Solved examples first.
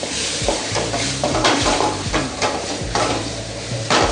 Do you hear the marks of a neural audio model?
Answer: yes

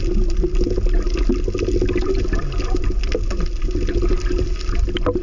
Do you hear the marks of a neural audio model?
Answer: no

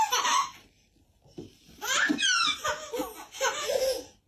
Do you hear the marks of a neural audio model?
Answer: no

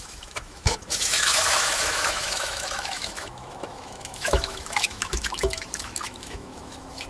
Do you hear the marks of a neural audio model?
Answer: yes